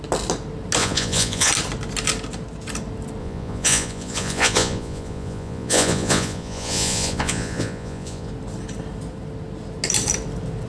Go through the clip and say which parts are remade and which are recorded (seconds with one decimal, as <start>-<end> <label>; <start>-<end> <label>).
0.0-0.8 recorded; 0.8-1.5 remade; 1.5-3.2 recorded; 3.2-8.3 remade; 8.3-10.7 recorded